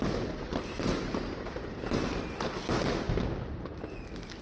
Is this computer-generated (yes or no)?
no